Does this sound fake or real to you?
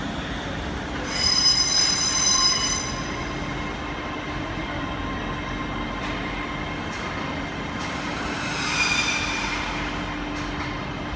real